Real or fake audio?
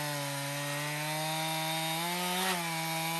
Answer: real